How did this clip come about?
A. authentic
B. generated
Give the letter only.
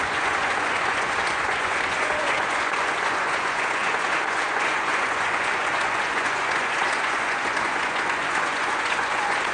B